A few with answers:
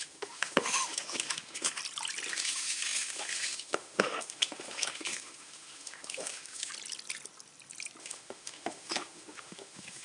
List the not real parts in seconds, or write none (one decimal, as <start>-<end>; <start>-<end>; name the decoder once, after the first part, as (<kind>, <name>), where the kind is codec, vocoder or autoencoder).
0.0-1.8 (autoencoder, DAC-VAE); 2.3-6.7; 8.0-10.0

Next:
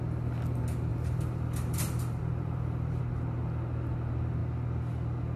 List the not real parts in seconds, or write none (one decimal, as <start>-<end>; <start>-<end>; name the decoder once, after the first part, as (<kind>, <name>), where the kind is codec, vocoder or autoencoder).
0.9-3.0 (vocoder, BigVGAN v2)

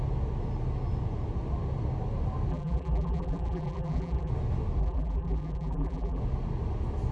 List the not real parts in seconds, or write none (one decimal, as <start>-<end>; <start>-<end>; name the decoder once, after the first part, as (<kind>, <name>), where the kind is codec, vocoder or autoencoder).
2.5-4.3 (vocoder, BigVGAN v2); 4.8-6.2

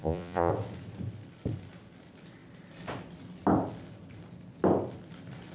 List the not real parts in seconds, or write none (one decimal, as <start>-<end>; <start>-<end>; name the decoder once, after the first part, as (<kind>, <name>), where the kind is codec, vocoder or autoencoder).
0.0-0.5 (vocoder, Vocos)